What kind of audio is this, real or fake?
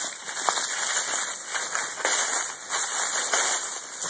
real